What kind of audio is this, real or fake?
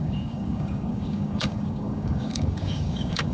fake